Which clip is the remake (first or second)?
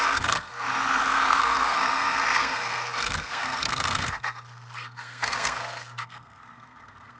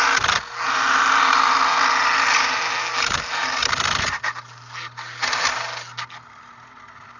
first